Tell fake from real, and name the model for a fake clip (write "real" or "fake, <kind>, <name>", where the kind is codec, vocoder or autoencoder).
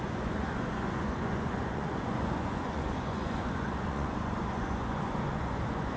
fake, vocoder, Vocos